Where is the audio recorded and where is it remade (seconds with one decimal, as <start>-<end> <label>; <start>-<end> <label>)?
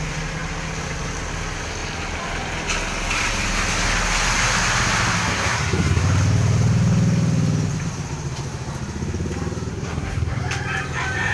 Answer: 0.0-5.3 recorded; 5.3-6.0 remade; 6.0-9.7 recorded; 9.7-10.4 remade; 10.4-11.3 recorded